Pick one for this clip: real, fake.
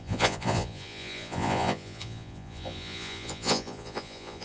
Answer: fake